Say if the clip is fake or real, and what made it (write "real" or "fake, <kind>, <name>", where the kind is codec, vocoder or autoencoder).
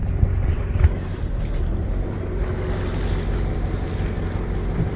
real